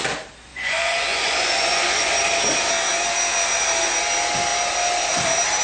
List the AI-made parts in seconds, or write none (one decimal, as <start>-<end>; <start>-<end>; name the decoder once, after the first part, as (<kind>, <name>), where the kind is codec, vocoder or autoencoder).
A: 0.5-2.1 (vocoder, Vocos)